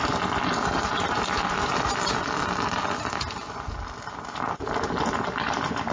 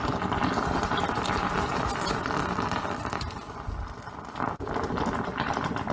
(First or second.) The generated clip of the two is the second